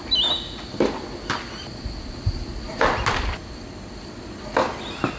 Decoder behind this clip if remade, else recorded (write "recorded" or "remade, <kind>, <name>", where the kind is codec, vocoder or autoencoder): recorded